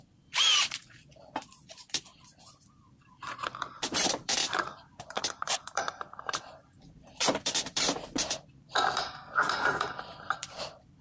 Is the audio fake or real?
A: fake